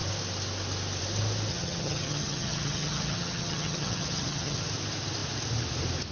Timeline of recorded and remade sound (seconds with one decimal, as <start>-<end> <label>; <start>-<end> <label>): 0.0-1.5 recorded; 1.5-4.6 remade; 4.6-6.1 recorded